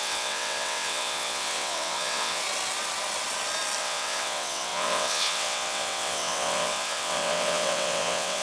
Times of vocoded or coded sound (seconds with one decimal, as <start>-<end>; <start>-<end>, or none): 0.0-2.4; 3.8-8.4